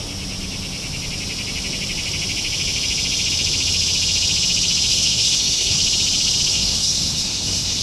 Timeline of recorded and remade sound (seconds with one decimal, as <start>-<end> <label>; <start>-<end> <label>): 0.0-4.9 recorded; 4.9-5.8 remade; 5.8-6.5 recorded; 6.5-7.8 remade